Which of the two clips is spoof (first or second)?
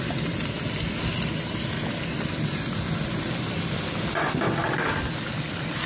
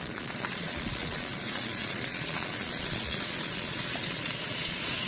second